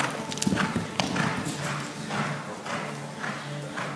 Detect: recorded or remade recorded